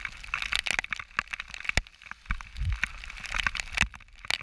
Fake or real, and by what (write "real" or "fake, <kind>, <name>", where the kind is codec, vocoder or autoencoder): real